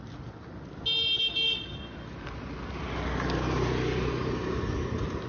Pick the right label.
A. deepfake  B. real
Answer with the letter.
B